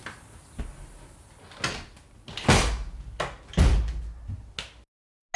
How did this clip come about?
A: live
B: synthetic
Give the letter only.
A